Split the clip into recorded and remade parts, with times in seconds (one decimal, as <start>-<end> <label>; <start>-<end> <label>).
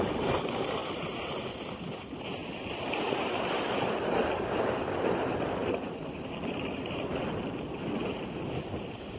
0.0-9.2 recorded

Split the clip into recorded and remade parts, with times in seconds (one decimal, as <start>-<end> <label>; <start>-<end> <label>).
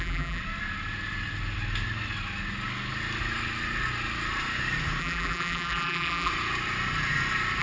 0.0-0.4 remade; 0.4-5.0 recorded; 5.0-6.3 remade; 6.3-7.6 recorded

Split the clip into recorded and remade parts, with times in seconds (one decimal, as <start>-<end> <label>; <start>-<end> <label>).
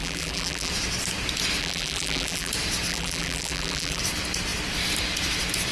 0.0-0.7 remade; 0.7-1.6 recorded; 1.6-2.5 remade; 2.5-2.9 recorded; 2.9-4.0 remade; 4.0-5.7 recorded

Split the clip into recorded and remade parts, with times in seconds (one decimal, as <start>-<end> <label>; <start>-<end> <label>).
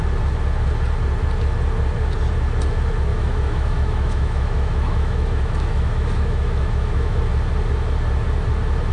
0.0-3.1 recorded; 3.1-7.2 remade; 7.2-8.9 recorded